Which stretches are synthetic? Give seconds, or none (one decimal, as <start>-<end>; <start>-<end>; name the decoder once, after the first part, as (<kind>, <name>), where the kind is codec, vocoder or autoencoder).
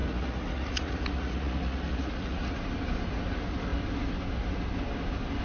0.0-2.6 (vocoder, Vocos)